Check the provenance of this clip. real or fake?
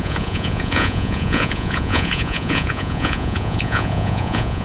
fake